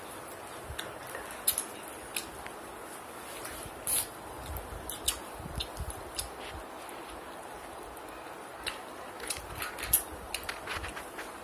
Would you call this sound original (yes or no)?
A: yes